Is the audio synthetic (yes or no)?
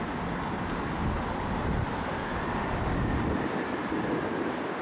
no